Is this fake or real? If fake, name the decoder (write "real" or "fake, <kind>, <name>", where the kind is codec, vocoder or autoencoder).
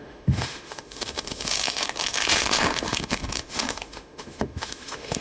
fake, autoencoder, DAC-VAE